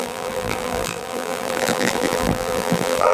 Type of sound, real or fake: fake